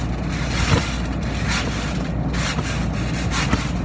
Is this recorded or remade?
recorded